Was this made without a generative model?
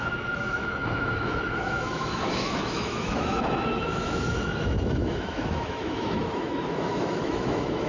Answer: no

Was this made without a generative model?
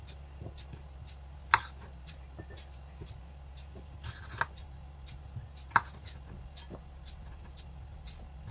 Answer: yes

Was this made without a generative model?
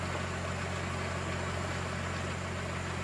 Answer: yes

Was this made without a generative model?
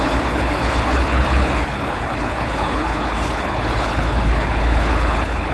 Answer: no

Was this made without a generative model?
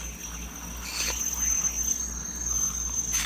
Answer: yes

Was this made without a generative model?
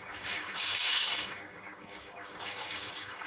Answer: no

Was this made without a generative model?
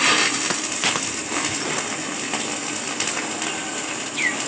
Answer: yes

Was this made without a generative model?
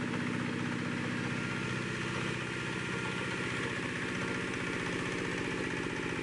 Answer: yes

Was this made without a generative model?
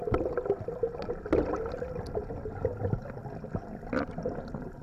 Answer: yes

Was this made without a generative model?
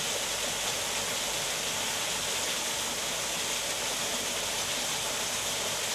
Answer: yes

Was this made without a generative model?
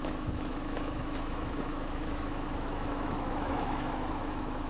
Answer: no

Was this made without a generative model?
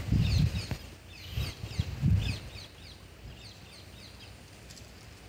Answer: yes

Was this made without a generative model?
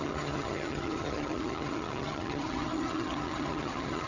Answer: no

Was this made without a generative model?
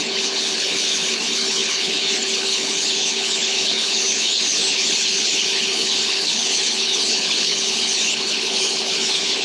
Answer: no